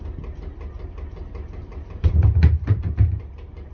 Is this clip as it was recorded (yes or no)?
yes